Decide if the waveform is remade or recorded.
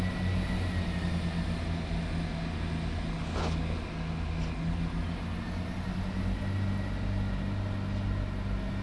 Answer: recorded